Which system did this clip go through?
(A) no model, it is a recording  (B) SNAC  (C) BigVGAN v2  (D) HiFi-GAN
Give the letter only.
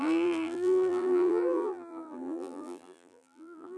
C